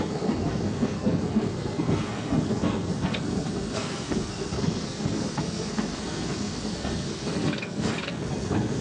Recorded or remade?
remade